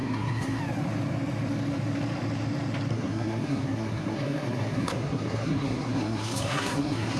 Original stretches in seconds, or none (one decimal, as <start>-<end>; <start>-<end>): 0.6-2.9